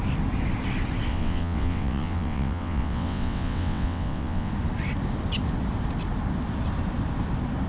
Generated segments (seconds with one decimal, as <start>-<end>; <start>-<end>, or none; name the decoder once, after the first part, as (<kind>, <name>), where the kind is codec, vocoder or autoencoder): 1.1-4.5 (vocoder, WaveNeXt)